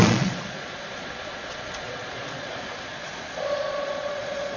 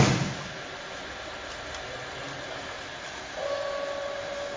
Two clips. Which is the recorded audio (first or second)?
second